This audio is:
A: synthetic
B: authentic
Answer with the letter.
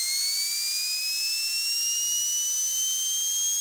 B